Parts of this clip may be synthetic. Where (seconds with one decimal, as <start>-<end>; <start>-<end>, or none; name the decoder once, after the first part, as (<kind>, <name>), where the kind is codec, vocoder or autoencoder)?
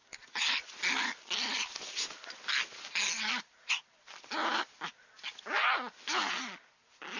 none